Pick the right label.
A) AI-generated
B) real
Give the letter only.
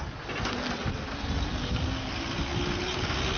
B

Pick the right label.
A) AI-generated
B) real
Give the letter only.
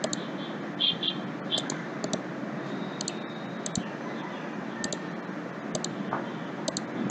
B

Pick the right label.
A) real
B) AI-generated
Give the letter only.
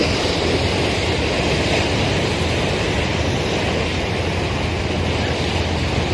A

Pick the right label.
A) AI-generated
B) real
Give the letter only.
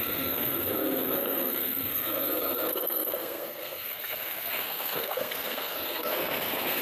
A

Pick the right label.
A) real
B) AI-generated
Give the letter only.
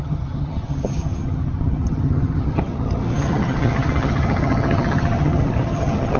B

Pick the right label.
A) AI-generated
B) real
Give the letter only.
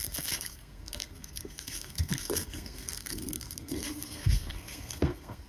A